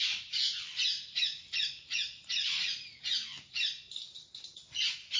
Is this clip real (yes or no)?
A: yes